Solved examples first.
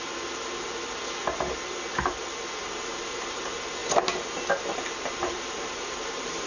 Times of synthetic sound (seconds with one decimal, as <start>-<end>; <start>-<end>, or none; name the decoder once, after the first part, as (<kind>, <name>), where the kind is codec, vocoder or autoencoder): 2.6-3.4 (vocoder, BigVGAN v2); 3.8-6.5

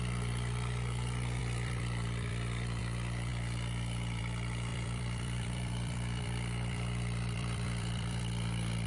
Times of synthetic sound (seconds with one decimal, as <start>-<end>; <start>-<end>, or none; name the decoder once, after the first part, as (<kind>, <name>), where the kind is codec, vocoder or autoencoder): 1.4-2.8 (vocoder, BigVGAN v2); 4.7-8.2

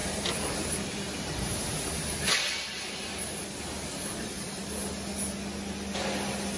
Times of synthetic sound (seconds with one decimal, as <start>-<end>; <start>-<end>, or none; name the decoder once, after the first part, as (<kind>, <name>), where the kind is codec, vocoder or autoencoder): 0.0-4.6 (vocoder, BigVGAN v2)